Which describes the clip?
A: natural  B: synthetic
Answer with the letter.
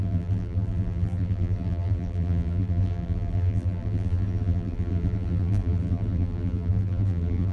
B